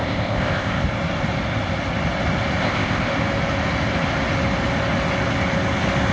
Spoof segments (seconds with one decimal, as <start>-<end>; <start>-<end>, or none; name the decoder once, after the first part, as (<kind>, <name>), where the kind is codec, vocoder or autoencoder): 0.0-0.8 (codec, ZipCodec); 2.6-3.1